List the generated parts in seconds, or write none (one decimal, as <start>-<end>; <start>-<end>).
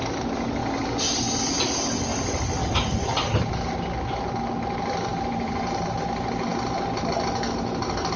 2.1-3.7; 5.1-6.0